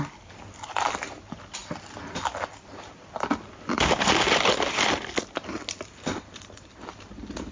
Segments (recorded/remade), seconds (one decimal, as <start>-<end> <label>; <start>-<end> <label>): 0.0-7.5 recorded